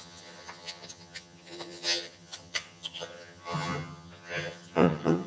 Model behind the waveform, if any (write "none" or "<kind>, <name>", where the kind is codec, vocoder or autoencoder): vocoder, HiFi-GAN